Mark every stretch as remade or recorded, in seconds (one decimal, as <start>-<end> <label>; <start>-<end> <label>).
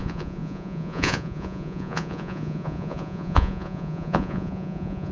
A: 0.0-5.1 remade